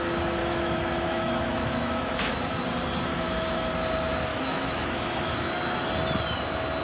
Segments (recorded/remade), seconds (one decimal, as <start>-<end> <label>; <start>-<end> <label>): 0.0-0.4 recorded; 0.4-2.3 remade; 2.3-3.1 recorded; 3.1-3.7 remade; 3.7-4.3 recorded; 4.3-5.5 remade; 5.5-6.8 recorded